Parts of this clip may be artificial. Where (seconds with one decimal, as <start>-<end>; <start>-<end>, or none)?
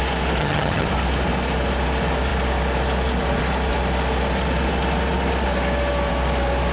0.4-0.9